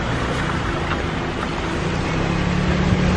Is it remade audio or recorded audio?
recorded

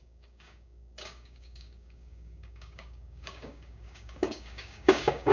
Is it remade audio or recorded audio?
remade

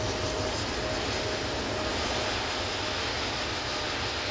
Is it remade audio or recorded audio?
recorded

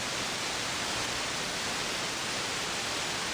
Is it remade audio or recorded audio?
recorded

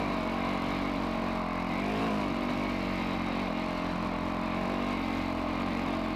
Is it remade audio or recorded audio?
recorded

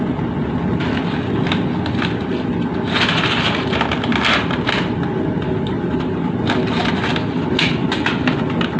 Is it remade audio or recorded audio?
recorded